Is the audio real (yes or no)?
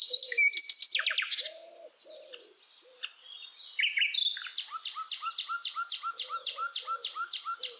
yes